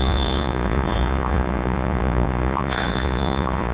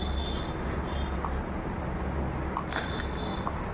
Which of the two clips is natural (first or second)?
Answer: second